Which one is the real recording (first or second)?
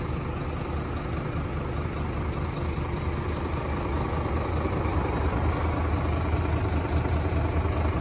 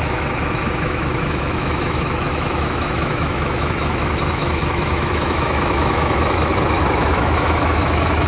first